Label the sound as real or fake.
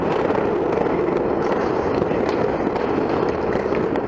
real